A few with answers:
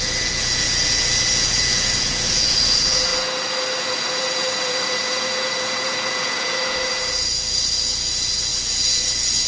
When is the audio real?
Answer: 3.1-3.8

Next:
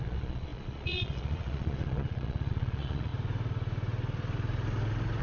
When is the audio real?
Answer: 3.1-5.2

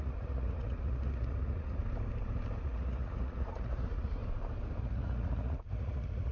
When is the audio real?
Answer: 1.8-2.6; 4.2-4.8

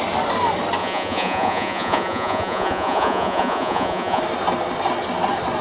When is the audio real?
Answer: 0.0-0.8; 4.2-5.6

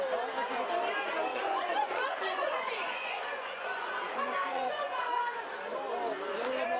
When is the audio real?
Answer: 0.0-1.3; 5.4-6.8

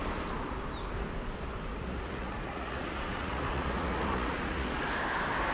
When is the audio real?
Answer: 0.0-1.7; 4.8-5.5